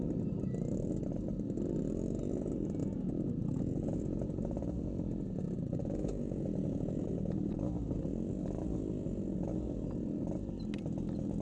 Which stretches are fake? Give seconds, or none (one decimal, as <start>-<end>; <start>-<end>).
2.8-7.7